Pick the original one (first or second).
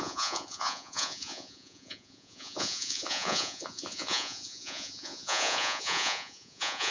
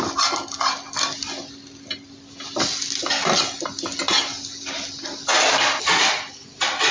second